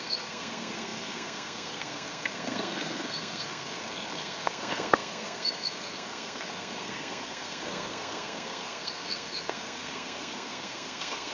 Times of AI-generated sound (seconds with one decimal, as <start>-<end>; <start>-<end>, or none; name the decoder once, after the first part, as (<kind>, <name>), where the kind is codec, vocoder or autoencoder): 0.0-11.3 (codec, SNAC)